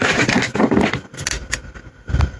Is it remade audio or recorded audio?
remade